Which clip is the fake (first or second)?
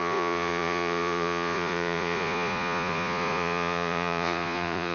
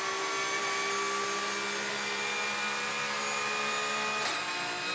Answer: first